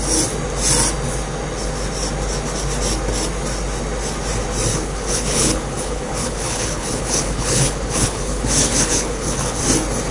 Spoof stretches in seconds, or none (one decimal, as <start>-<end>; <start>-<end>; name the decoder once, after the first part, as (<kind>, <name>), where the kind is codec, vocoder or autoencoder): 4.7-9.6 (codec, HILCodec)